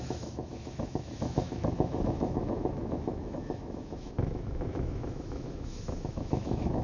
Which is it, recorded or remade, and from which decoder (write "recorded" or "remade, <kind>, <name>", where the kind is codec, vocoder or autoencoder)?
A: remade, autoencoder, DAC-VAE